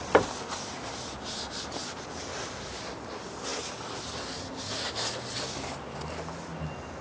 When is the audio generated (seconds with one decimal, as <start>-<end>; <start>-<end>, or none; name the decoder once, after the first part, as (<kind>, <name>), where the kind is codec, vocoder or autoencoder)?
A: none